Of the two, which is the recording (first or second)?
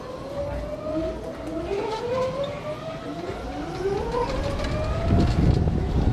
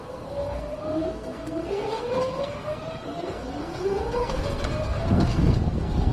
first